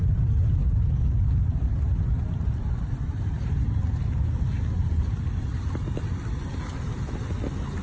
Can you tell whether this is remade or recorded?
recorded